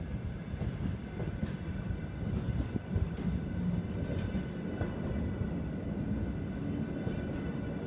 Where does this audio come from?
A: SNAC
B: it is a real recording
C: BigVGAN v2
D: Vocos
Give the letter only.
B